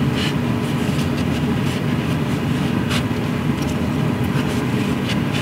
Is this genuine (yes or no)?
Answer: yes